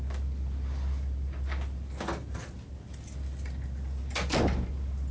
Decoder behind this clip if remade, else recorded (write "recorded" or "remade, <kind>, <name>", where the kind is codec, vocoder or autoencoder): recorded